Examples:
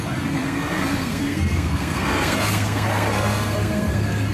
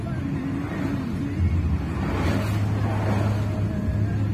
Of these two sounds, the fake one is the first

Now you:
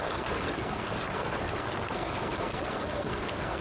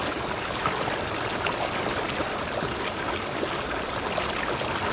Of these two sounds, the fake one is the first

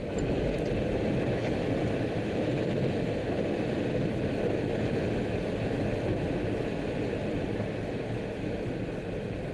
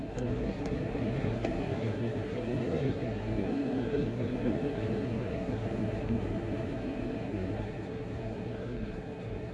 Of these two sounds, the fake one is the second